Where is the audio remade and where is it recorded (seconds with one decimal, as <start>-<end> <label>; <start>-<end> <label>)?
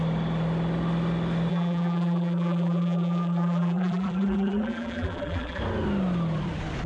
0.0-1.5 recorded; 1.5-5.6 remade; 5.6-6.9 recorded